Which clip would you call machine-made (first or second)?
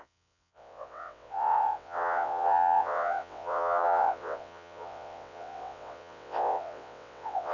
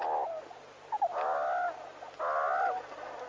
first